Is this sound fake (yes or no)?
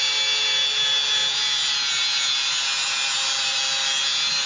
no